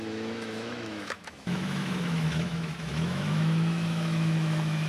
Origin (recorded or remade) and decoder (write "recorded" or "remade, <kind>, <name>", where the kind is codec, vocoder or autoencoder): remade, autoencoder, DAC-VAE